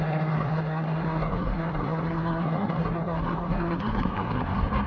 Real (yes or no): no